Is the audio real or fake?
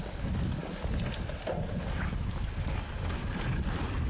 real